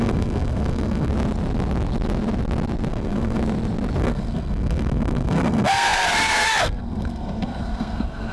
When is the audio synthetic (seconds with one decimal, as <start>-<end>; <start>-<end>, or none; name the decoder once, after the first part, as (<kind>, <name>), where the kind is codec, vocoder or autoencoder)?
0.0-1.1 (codec, SNAC); 2.9-3.4; 4.0-8.3